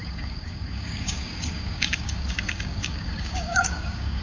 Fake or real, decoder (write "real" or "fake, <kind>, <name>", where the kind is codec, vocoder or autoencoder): fake, codec, DAC